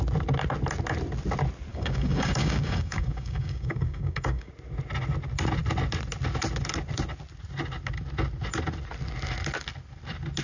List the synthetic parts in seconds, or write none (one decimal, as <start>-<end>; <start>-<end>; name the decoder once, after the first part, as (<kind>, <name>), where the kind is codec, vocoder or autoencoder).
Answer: 1.7-4.5 (codec, DAC)